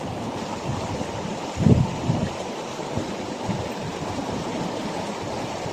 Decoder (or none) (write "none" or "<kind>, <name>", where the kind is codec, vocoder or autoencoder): none